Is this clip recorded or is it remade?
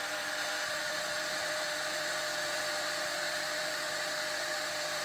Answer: remade